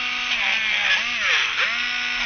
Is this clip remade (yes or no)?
no